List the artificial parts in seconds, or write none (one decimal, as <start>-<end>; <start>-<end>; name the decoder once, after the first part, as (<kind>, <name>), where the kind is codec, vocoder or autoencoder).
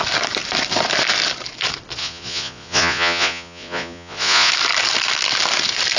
2.0-4.5 (vocoder, Vocos)